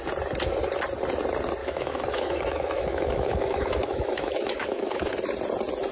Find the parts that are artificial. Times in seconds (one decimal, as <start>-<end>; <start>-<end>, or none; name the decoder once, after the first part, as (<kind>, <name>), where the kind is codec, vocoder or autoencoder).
1.6-5.1 (autoencoder, DAC-VAE)